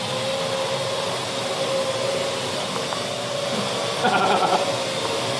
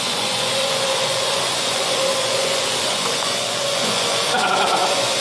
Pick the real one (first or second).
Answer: first